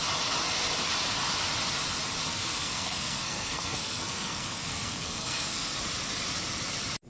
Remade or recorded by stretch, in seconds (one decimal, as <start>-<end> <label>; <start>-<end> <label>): 0.0-2.3 recorded; 2.3-5.8 remade; 5.8-7.1 recorded